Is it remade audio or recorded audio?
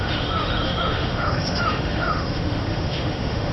remade